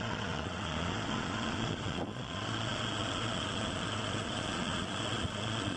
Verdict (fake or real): fake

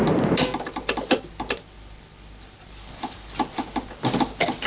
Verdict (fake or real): real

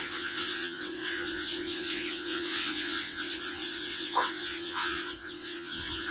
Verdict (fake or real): fake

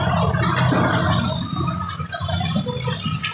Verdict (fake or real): real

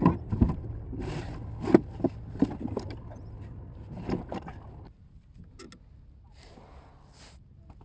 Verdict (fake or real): real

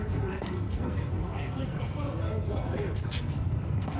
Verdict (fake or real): fake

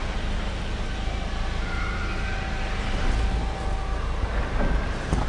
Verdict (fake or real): real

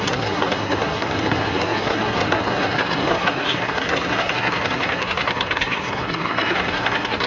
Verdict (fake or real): fake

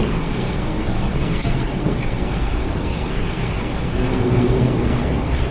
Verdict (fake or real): fake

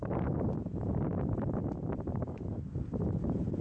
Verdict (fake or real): real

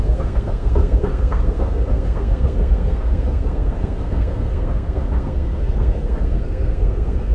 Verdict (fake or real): fake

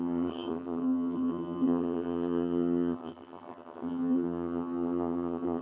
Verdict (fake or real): fake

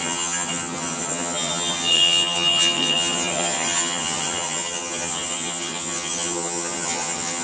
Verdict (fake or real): fake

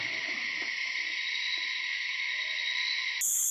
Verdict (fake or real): real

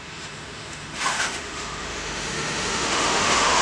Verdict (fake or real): fake